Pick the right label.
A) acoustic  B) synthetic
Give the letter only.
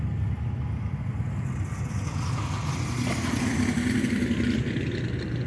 A